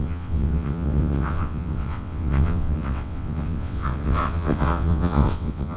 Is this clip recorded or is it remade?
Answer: remade